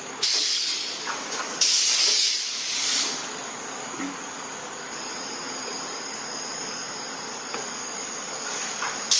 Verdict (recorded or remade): remade